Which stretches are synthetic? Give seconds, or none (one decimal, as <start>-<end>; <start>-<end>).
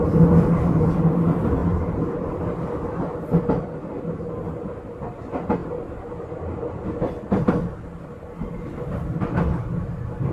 1.6-2.4